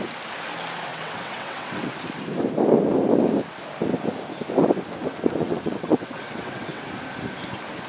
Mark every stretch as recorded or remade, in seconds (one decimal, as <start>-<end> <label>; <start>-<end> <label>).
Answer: 0.0-0.9 recorded; 0.9-1.9 remade; 1.9-5.4 recorded; 5.4-6.9 remade; 6.9-7.9 recorded